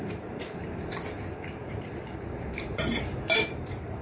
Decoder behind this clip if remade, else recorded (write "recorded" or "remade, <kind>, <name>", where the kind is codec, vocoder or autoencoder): remade, vocoder, BigVGAN v2